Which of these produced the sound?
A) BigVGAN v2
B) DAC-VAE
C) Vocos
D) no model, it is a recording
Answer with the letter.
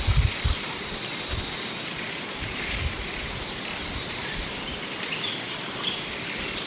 D